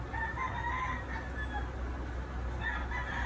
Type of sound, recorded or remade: recorded